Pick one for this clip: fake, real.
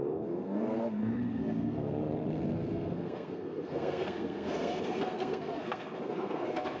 fake